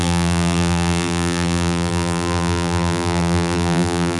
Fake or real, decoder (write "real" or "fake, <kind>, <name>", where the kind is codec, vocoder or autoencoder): fake, vocoder, BigVGAN v2